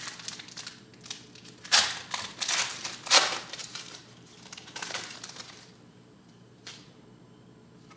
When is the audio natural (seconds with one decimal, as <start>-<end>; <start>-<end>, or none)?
0.0-3.6; 7.0-8.0